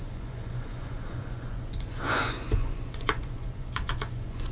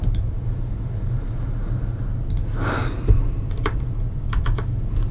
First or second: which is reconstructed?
first